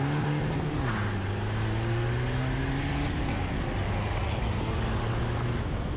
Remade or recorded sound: recorded